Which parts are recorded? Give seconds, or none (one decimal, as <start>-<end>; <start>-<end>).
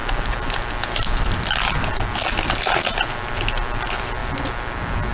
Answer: 0.0-5.1